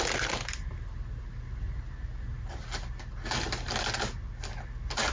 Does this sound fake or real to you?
real